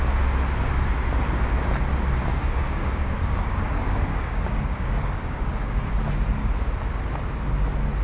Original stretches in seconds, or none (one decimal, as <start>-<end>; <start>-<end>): 0.0-2.3; 5.9-8.0